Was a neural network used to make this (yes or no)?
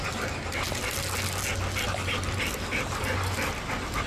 no